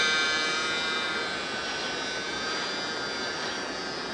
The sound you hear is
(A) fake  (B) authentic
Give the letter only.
B